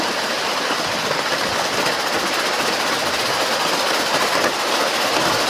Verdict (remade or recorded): recorded